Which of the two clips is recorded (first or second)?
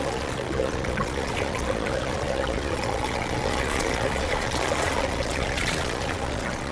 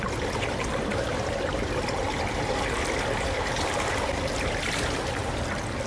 second